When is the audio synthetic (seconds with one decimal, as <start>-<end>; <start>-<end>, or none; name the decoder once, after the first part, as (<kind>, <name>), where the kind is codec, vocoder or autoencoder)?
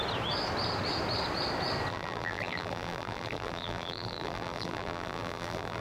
1.9-5.8 (vocoder, BigVGAN v2)